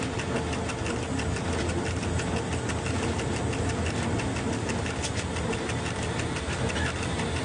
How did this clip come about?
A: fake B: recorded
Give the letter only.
B